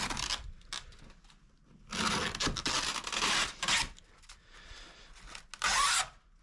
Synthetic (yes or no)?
no